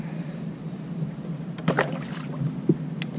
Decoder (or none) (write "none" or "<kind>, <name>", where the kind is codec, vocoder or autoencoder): none